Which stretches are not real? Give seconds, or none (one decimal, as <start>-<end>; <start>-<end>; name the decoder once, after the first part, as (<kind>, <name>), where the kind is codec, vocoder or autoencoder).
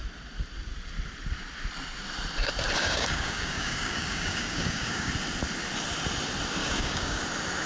2.8-5.1 (codec, DAC); 6.6-7.2